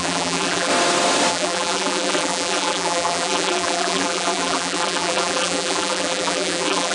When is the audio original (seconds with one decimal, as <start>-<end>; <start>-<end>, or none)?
0.7-1.3